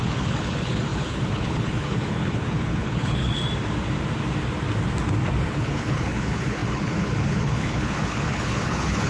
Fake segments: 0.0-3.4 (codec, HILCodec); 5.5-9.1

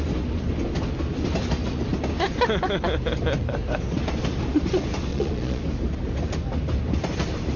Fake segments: 5.1-5.6 (vocoder, Vocos)